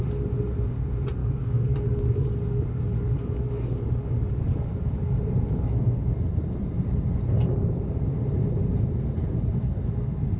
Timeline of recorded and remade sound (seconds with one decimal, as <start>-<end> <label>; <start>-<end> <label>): 0.0-1.2 recorded; 1.2-5.2 remade; 5.2-10.4 recorded